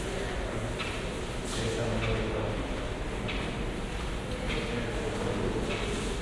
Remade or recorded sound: recorded